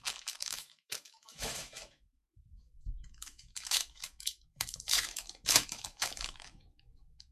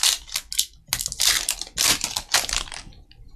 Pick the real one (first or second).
second